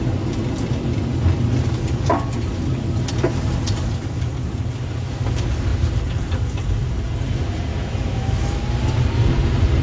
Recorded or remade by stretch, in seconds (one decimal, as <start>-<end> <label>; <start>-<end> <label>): 0.0-7.7 recorded; 7.7-8.6 remade; 8.6-9.8 recorded